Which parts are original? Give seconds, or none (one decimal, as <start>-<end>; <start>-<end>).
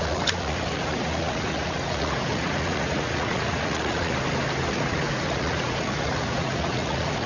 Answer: 4.1-4.7